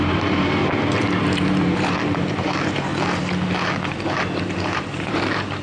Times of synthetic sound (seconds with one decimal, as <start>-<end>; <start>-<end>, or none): 0.0-0.6; 1.2-2.9; 4.4-5.6